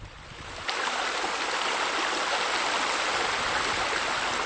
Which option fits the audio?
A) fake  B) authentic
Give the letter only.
B